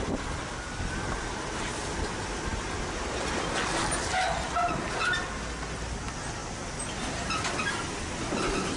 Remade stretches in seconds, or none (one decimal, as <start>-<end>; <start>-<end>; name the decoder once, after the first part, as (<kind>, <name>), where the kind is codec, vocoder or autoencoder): none